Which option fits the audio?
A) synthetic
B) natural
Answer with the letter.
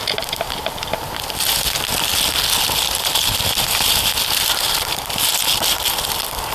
B